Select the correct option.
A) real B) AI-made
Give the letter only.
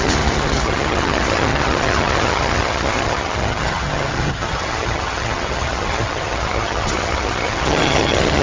B